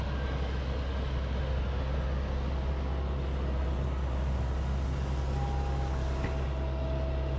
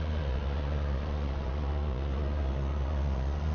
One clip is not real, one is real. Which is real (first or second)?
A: first